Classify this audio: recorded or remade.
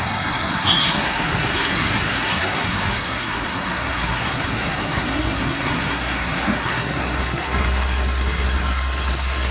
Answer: remade